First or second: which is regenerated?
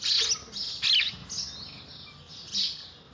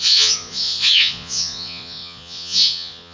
second